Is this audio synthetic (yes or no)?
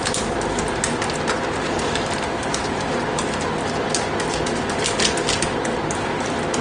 no